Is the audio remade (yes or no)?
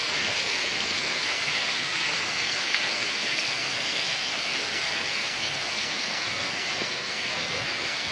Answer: yes